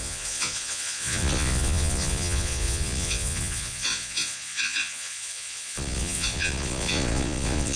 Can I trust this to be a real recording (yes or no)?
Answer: no